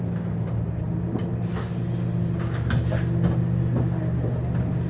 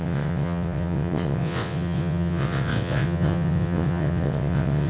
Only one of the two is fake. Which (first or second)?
second